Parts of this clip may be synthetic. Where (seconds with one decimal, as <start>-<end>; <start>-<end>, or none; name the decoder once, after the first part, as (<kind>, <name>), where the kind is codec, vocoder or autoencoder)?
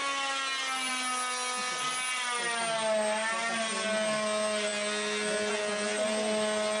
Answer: none